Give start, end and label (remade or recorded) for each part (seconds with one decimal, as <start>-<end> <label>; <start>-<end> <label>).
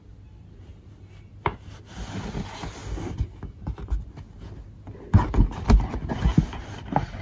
0.0-7.2 recorded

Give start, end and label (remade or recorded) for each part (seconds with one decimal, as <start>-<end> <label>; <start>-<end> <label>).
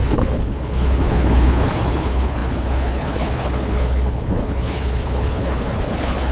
0.0-6.3 remade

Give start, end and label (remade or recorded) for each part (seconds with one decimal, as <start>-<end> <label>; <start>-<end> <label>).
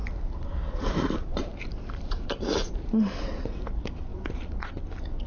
0.0-3.2 remade; 3.2-4.1 recorded; 4.1-4.7 remade; 4.7-5.3 recorded